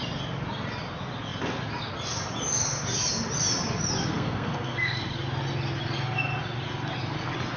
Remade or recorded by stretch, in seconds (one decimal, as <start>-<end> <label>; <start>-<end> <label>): 0.0-4.1 recorded; 4.1-5.2 remade; 5.2-7.6 recorded